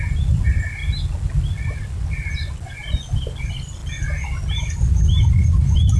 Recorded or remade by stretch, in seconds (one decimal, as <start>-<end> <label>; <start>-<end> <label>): 0.0-0.8 remade; 0.8-1.6 recorded; 1.6-2.8 remade; 2.8-3.4 recorded; 3.4-3.8 remade; 3.8-5.3 recorded; 5.3-6.0 remade